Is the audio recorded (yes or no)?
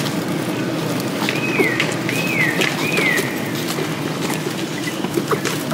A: yes